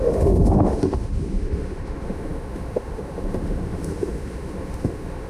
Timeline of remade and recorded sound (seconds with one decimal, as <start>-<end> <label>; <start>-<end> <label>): 0.0-5.3 remade